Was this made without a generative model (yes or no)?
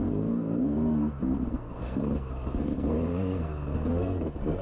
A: no